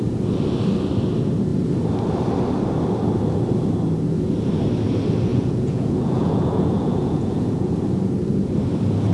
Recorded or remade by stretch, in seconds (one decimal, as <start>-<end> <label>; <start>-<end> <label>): 0.0-5.3 recorded; 5.3-7.7 remade; 7.7-9.1 recorded